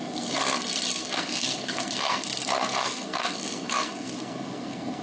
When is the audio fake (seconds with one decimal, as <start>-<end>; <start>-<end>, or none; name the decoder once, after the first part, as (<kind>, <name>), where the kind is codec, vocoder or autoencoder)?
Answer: 0.0-5.0 (codec, SNAC)